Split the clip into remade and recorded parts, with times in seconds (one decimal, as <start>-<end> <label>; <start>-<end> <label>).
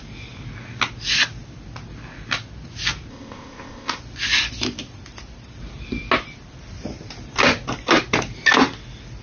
0.0-3.1 recorded; 3.1-4.0 remade; 4.0-9.2 recorded